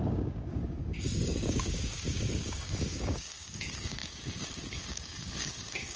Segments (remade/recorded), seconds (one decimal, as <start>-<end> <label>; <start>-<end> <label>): 0.0-6.0 remade